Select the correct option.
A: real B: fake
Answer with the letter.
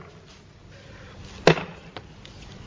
A